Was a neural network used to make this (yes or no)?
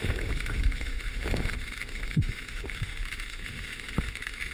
yes